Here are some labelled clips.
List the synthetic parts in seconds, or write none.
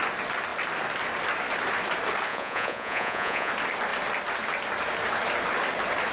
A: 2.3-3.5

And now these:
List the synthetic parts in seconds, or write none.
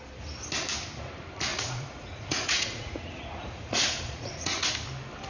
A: 1.5-4.7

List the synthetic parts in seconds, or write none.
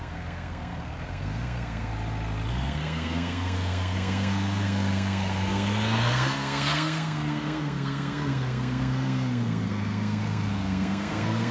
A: 0.0-1.9; 2.5-11.5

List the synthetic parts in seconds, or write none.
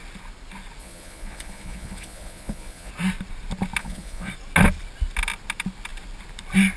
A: 0.8-2.9; 3.8-4.3